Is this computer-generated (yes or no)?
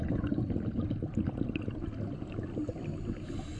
no